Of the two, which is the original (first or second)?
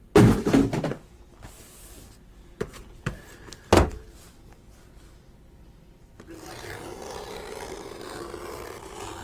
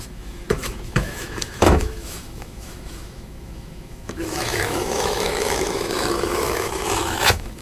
first